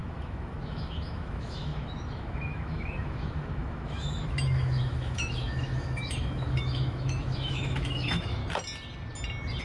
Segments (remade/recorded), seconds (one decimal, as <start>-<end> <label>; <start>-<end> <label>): 0.0-8.4 remade; 8.4-9.6 recorded